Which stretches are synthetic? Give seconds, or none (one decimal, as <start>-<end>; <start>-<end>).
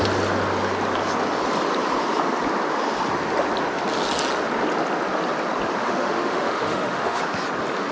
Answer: 5.8-7.2